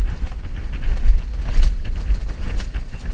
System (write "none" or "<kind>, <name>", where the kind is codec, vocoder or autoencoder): none